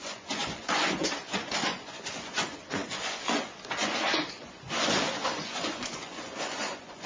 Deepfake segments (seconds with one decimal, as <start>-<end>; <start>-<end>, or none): 0.0-7.1